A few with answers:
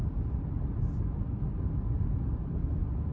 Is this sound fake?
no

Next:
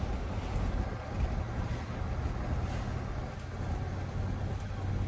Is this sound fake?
no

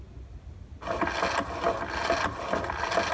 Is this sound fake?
no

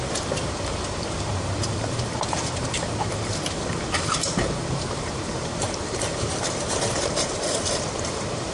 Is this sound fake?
yes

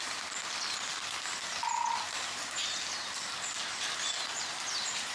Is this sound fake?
no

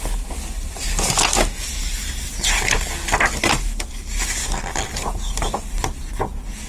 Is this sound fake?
no